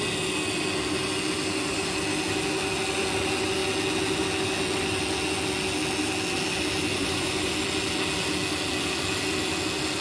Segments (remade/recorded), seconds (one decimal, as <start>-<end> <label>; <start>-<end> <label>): 0.0-6.9 recorded; 6.9-7.5 remade; 7.5-10.0 recorded